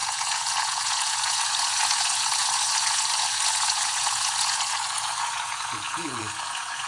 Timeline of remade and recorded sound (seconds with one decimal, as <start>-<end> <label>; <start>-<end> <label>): 0.0-6.9 remade